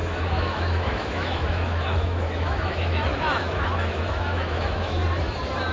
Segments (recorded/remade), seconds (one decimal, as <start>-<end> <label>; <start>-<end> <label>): 0.0-5.0 remade; 5.0-5.7 recorded